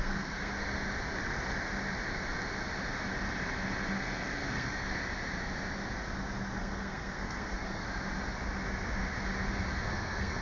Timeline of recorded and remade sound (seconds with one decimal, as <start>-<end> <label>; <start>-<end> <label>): 0.0-0.6 remade; 0.6-3.9 recorded; 3.9-5.0 remade; 5.0-6.6 recorded; 6.6-7.8 remade; 7.8-9.9 recorded; 9.9-10.4 remade